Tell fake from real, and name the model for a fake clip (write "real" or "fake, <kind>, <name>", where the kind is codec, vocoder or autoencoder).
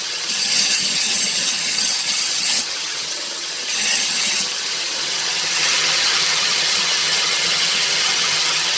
fake, vocoder, HiFi-GAN